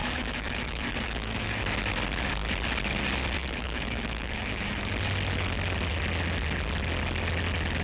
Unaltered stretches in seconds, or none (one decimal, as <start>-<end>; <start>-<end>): 1.6-3.4; 4.9-7.8